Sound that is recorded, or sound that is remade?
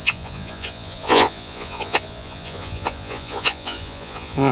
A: remade